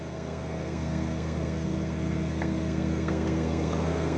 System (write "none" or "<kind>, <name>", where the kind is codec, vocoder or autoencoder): codec, SNAC